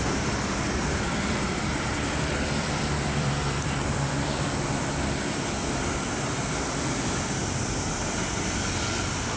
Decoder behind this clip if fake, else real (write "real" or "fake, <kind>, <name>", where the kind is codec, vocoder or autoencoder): fake, vocoder, BigVGAN v2